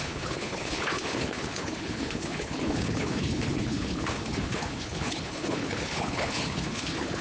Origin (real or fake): fake